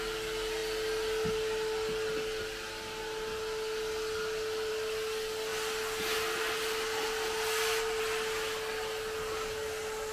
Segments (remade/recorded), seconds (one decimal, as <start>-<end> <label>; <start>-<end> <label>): 0.0-10.1 recorded